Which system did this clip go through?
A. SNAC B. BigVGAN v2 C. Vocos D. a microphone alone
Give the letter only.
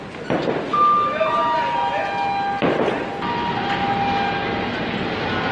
D